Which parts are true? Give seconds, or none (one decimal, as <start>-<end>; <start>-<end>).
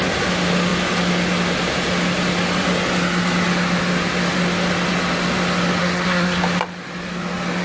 0.0-5.8; 6.4-7.6